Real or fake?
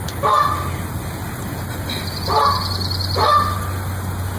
real